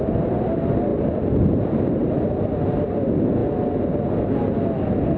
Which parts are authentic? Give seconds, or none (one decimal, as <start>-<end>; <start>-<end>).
0.0-5.2